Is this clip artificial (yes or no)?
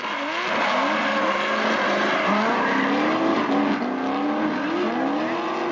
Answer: no